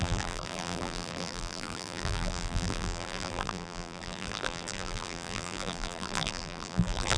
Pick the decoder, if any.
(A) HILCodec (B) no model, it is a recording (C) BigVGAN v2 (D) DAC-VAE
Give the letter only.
C